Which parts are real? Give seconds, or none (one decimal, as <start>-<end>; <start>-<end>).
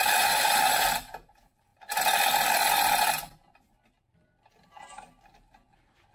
1.7-4.6